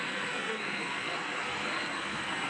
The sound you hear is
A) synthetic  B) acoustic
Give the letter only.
A